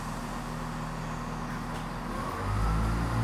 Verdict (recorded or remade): recorded